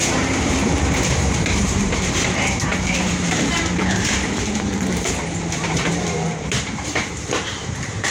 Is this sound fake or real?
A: fake